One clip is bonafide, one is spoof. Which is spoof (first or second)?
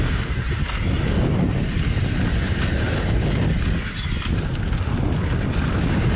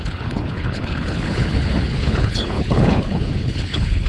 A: second